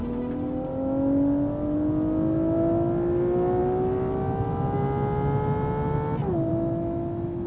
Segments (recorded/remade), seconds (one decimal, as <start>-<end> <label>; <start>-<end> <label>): 0.0-7.5 recorded